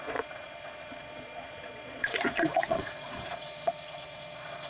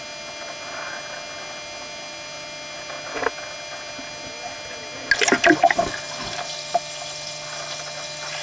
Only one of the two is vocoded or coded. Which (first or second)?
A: first